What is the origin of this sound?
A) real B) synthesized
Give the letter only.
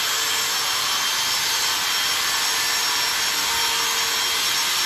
A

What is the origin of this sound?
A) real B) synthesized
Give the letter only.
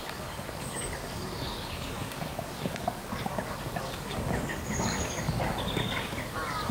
B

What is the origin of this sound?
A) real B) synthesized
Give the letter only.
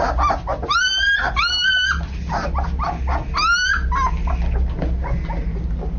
A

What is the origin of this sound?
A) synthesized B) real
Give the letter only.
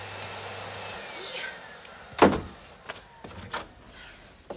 B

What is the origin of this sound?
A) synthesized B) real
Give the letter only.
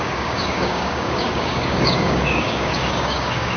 A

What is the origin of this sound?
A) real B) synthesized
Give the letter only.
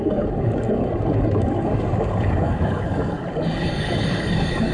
B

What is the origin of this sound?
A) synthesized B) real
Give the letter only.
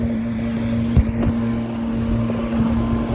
B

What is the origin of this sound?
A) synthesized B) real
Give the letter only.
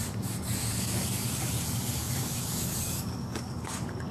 A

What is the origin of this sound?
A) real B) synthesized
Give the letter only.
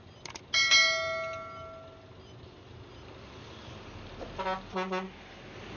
A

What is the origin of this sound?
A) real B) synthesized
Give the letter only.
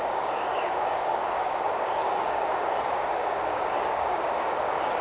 B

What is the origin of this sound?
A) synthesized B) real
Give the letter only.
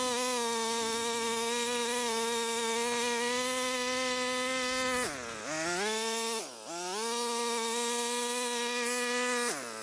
B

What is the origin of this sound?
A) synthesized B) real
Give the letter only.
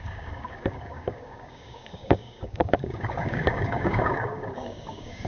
A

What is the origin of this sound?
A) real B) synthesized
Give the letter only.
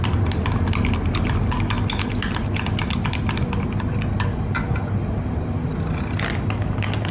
A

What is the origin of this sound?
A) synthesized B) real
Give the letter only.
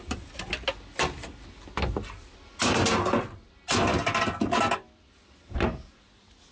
B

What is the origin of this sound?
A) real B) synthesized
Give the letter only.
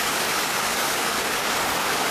B